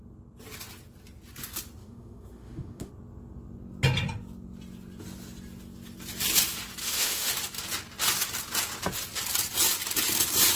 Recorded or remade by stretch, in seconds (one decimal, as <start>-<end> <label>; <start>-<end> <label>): 0.0-1.8 recorded; 1.8-2.9 remade; 2.9-6.8 recorded; 6.8-7.3 remade; 7.3-10.6 recorded